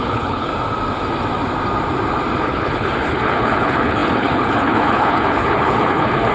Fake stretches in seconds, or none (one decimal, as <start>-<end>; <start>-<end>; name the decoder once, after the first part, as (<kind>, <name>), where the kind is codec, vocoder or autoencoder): 0.0-0.5 (codec, HILCodec); 2.4-6.3